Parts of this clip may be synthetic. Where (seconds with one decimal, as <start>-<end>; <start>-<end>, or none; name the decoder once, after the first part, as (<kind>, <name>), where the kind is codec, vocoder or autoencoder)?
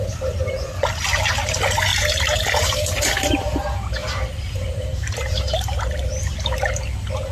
1.9-6.3 (vocoder, BigVGAN v2)